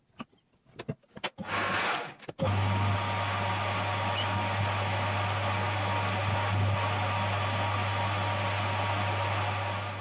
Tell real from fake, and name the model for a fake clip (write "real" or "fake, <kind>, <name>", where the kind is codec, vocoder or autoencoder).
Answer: real